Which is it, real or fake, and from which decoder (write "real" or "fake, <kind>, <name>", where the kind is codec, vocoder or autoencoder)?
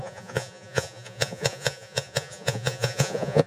fake, vocoder, Vocos